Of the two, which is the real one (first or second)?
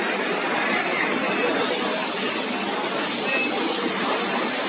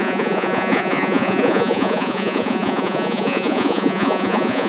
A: first